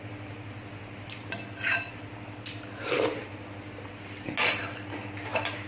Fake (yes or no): no